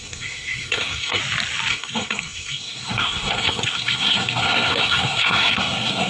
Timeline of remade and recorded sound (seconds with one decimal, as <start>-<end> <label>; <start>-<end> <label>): 0.0-1.2 remade; 1.2-1.7 recorded; 1.7-6.1 remade